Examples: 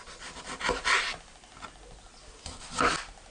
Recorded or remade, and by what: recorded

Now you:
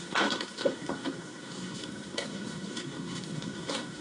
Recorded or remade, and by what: remade, codec, SNAC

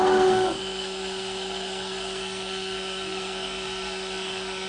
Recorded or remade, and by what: remade, codec, SNAC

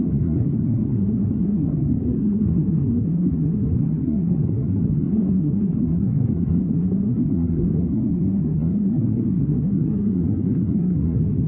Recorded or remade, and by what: remade, codec, SNAC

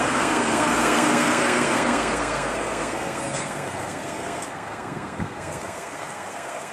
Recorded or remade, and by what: remade, codec, SNAC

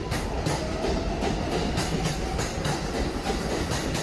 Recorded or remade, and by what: recorded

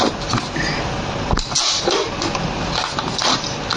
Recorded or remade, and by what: recorded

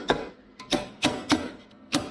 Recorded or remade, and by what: remade, codec, SNAC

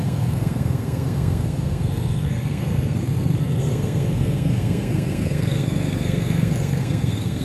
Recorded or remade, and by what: remade, codec, SNAC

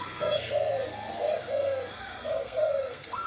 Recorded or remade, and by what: remade, codec, SNAC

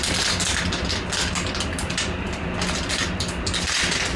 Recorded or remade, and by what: recorded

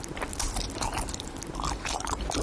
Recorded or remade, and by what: recorded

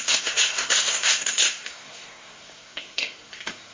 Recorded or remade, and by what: remade, codec, SNAC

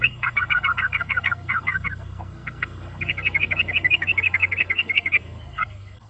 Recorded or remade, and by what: remade, codec, SNAC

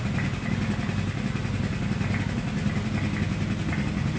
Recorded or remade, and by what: recorded